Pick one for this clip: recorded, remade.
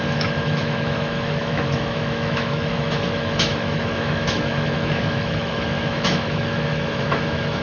remade